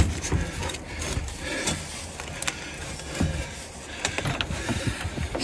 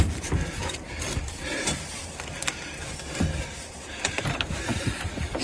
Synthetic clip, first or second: second